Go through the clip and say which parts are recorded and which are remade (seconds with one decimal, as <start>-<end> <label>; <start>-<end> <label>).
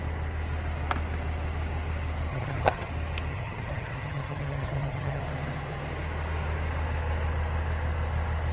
0.0-2.3 recorded; 2.3-2.9 remade; 2.9-3.3 recorded; 3.3-5.2 remade; 5.2-8.5 recorded